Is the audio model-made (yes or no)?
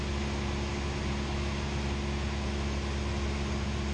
no